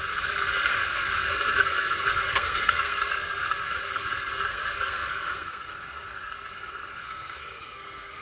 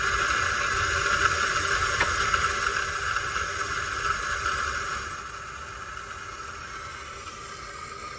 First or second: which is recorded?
second